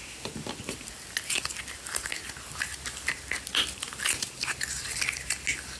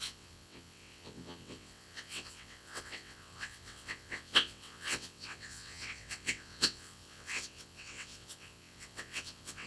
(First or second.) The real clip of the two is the first